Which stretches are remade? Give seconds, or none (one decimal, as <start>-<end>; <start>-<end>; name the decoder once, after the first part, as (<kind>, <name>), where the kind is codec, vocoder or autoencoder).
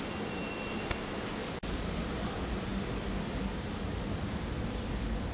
none